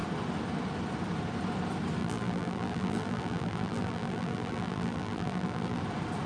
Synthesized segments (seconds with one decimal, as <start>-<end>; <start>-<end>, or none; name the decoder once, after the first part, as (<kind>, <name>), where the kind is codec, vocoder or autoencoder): 2.0-5.8 (vocoder, BigVGAN v2)